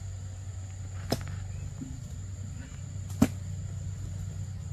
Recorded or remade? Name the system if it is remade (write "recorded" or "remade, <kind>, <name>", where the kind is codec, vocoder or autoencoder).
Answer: recorded